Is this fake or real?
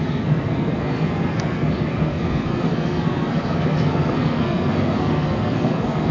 fake